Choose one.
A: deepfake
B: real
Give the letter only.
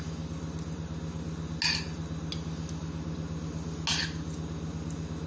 B